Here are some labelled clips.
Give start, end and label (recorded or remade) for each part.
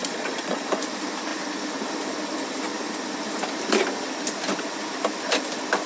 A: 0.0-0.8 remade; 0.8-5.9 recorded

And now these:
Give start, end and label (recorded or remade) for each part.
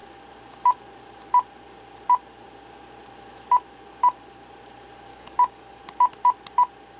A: 0.0-5.1 recorded; 5.1-5.8 remade; 5.8-7.0 recorded